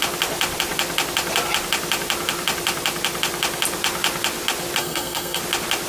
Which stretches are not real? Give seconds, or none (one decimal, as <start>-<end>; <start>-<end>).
4.8-5.4